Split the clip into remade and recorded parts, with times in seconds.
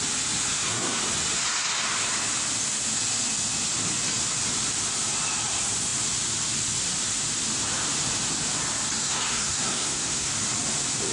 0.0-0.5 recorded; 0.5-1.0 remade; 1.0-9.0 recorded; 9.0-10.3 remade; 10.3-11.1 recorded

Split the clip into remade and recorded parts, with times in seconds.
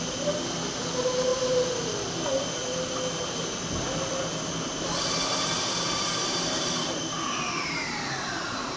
0.0-6.2 recorded; 6.2-8.8 remade